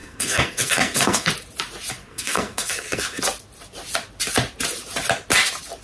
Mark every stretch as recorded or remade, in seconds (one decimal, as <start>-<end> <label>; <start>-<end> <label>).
0.0-1.3 remade; 1.3-2.0 recorded; 2.0-3.2 remade; 3.2-5.8 recorded